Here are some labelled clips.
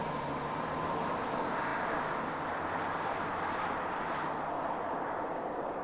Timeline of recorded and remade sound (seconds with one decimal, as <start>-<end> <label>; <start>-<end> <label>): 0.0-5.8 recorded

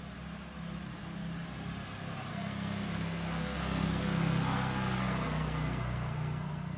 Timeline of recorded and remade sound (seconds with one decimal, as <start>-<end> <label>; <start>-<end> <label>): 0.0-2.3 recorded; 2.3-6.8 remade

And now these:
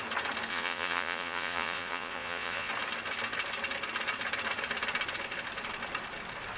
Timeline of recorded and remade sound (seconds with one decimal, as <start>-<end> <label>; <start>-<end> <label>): 0.0-0.5 recorded; 0.5-2.7 remade; 2.7-6.6 recorded

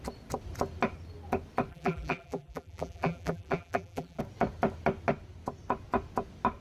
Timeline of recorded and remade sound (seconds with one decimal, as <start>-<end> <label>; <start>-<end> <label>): 0.0-1.7 recorded; 1.7-4.2 remade; 4.2-6.6 recorded

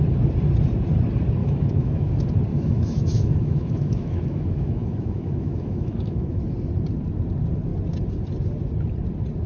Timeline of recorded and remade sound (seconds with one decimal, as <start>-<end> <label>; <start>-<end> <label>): 0.0-1.4 recorded; 1.4-2.1 remade; 2.1-2.5 recorded; 2.5-6.4 remade; 6.4-9.5 recorded

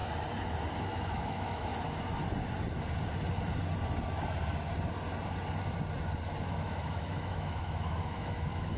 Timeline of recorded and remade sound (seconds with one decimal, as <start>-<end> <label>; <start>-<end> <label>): 0.0-0.8 recorded; 0.8-1.7 remade; 1.7-6.4 recorded; 6.4-8.8 remade

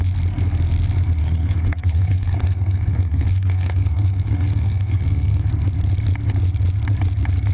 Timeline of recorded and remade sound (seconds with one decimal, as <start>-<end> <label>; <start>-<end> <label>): 0.0-1.2 recorded; 1.2-5.5 remade; 5.5-7.5 recorded

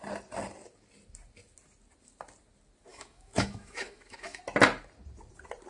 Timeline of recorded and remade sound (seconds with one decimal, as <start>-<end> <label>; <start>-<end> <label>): 0.0-2.9 recorded; 2.9-4.4 remade; 4.4-5.7 recorded